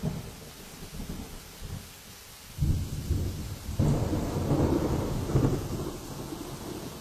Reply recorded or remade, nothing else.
recorded